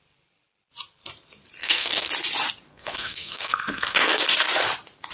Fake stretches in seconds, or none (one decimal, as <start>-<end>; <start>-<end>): 1.6-2.1; 2.7-4.2